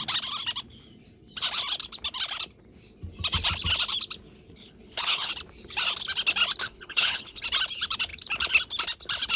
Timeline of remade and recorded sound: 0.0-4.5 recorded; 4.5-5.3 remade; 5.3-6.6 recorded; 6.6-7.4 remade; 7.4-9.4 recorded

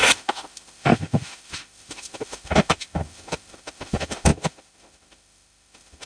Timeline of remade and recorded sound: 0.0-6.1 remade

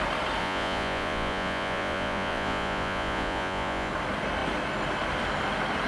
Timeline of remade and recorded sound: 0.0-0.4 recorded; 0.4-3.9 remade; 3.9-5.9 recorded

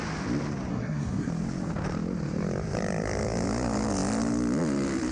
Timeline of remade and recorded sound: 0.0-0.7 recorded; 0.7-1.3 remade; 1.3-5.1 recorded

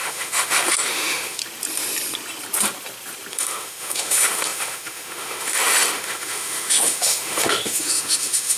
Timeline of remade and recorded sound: 0.0-1.4 remade; 1.4-3.3 recorded; 3.3-8.6 remade